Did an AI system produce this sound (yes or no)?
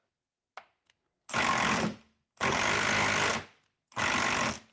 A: no